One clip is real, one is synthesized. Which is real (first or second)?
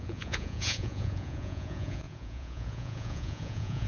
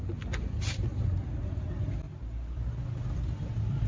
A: second